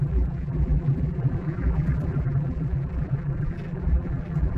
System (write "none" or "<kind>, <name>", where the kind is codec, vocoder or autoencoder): vocoder, BigVGAN v2